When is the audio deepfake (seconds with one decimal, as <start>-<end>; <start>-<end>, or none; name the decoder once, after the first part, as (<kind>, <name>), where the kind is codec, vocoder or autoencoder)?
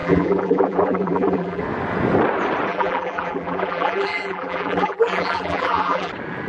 0.0-1.6 (vocoder, BigVGAN v2); 2.7-6.1